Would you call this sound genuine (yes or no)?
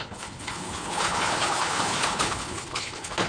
no